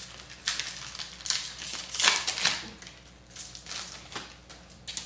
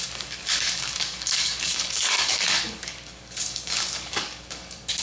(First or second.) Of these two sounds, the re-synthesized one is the second